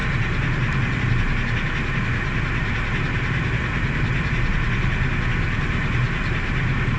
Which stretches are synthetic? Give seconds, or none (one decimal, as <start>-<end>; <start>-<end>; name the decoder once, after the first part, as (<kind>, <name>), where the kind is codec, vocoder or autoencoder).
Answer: none